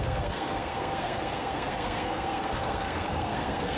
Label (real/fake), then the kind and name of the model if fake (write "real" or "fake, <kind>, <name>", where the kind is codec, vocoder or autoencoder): fake, codec, SNAC